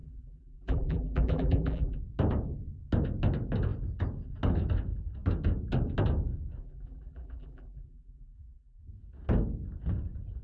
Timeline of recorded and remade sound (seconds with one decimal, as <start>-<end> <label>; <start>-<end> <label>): 0.0-2.0 remade; 2.0-6.6 recorded; 6.6-8.8 remade; 8.8-10.4 recorded